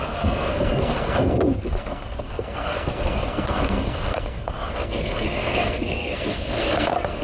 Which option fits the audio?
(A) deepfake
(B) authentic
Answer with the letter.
A